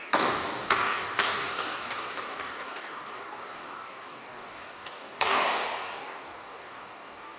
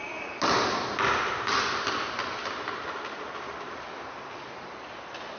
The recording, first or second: second